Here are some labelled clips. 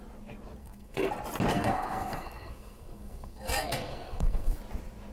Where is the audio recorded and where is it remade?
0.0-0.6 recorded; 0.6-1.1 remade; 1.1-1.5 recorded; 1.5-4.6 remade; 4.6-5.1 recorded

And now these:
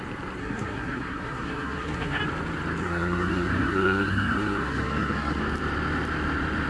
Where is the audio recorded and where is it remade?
0.0-0.4 recorded; 0.4-2.2 remade; 2.2-2.8 recorded; 2.8-5.4 remade; 5.4-6.7 recorded

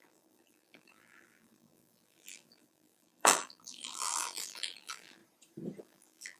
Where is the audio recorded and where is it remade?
0.0-5.2 remade; 5.2-5.8 recorded; 5.8-6.4 remade

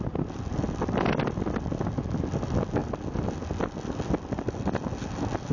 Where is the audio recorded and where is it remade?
0.0-5.5 recorded

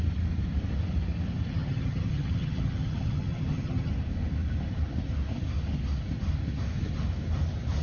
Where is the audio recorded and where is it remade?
0.0-1.5 recorded; 1.5-3.9 remade; 3.9-7.8 recorded

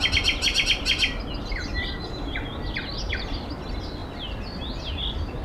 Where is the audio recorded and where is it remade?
0.0-5.4 recorded

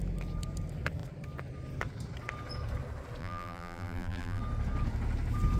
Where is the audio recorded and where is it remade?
0.0-3.2 recorded; 3.2-4.4 remade; 4.4-5.6 recorded

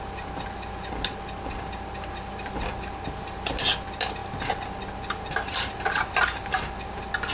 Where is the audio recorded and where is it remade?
0.0-7.3 recorded